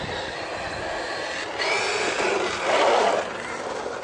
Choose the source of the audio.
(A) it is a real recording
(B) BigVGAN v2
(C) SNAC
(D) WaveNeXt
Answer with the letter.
A